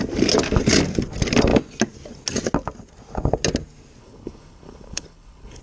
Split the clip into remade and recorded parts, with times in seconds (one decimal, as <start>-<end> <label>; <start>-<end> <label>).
0.0-4.0 recorded; 4.0-5.6 remade

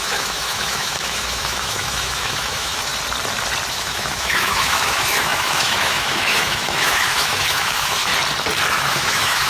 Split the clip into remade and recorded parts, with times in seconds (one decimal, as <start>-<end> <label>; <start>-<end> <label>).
0.0-2.9 remade; 2.9-3.7 recorded; 3.7-8.1 remade; 8.1-8.7 recorded; 8.7-9.5 remade

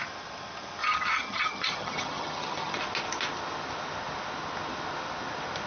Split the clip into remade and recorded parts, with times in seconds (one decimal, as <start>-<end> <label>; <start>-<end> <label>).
0.0-0.8 recorded; 0.8-2.8 remade; 2.8-5.7 recorded

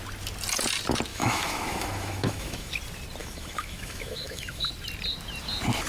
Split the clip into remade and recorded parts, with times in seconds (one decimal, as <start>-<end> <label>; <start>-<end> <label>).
0.0-1.1 recorded; 1.1-2.7 remade; 2.7-3.2 recorded; 3.2-4.7 remade; 4.7-5.9 recorded

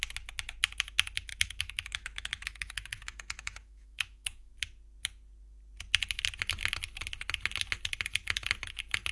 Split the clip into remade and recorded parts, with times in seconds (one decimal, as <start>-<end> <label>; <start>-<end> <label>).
0.0-1.3 recorded; 1.3-4.5 remade; 4.5-9.1 recorded

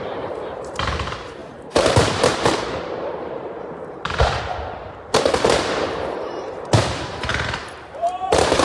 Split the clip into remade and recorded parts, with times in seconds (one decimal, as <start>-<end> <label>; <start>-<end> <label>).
0.0-8.6 remade

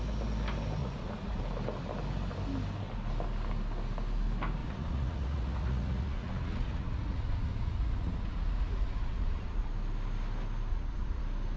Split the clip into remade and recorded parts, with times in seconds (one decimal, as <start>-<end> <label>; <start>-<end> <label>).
0.0-0.8 recorded; 0.8-1.4 remade; 1.4-4.6 recorded; 4.6-9.7 remade; 9.7-10.7 recorded; 10.7-11.2 remade; 11.2-11.6 recorded